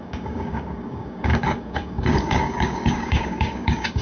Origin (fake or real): fake